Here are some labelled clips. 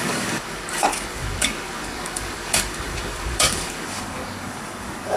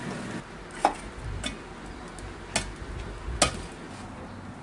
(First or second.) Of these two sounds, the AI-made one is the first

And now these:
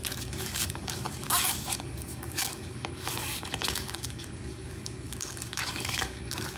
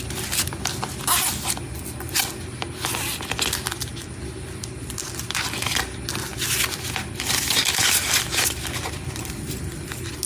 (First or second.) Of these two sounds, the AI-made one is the first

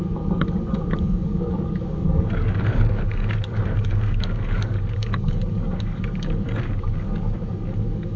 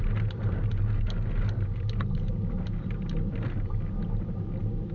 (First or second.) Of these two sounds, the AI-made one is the first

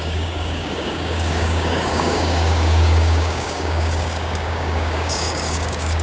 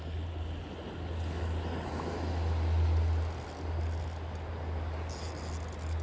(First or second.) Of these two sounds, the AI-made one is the first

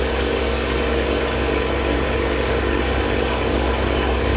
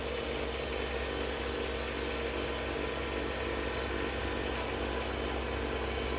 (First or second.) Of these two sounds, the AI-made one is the first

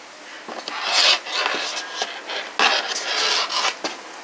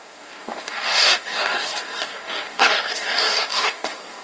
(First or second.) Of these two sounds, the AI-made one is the second